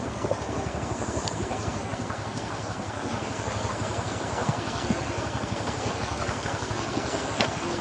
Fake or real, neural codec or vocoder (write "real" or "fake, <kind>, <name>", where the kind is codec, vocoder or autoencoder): fake, codec, SNAC